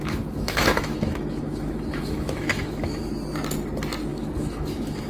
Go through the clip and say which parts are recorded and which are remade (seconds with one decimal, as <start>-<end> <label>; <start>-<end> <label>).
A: 0.0-3.1 remade; 3.1-4.1 recorded; 4.1-5.1 remade